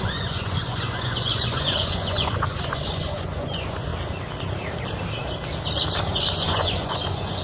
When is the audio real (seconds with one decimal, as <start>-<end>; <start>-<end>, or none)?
3.9-6.1